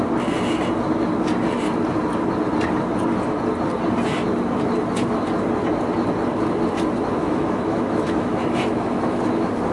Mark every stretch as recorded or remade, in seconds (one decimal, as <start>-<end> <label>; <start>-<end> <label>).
0.0-7.2 recorded; 7.2-9.2 remade; 9.2-9.7 recorded